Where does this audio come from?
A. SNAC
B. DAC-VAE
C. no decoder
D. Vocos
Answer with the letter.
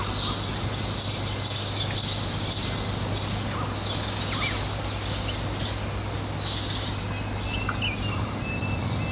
C